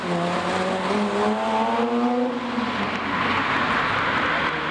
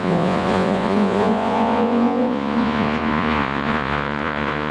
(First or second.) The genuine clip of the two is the first